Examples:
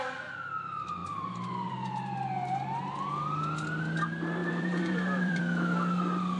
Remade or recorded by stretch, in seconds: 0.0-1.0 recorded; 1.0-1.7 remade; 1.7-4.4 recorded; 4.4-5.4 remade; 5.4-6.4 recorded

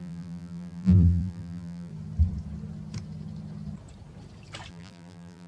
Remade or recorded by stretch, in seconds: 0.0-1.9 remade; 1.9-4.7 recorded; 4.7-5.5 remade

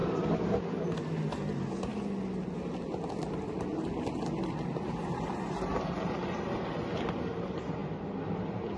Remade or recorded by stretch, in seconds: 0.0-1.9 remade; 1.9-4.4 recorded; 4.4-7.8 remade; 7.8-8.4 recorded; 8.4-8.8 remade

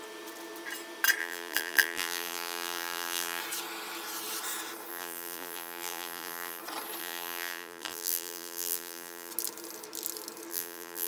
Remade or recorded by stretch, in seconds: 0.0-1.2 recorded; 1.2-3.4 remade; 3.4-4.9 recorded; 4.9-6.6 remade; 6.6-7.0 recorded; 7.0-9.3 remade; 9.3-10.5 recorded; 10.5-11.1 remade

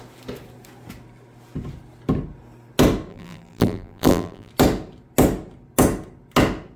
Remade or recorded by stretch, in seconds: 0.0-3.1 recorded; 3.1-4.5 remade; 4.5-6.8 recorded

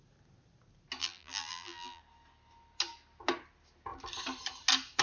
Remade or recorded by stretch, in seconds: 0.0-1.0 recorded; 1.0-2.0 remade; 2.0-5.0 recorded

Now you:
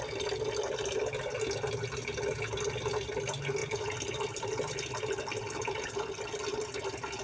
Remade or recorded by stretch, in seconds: 0.0-3.6 recorded; 3.6-7.2 remade

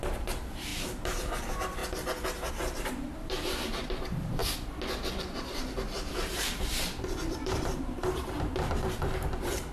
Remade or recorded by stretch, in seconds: 0.0-1.8 remade; 1.8-2.5 recorded; 2.5-4.4 remade; 4.4-5.2 recorded; 5.2-9.7 remade